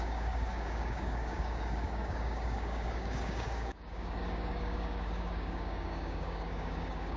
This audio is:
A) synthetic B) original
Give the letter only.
A